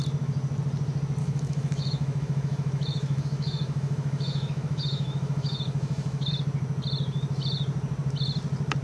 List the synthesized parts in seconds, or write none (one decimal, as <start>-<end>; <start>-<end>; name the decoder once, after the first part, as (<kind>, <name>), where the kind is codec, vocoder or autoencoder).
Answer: 1.2-6.3 (autoencoder, DAC-VAE)